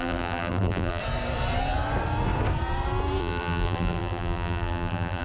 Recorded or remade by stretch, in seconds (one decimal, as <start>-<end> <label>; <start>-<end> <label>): 0.0-1.0 remade; 1.0-3.2 recorded; 3.2-5.2 remade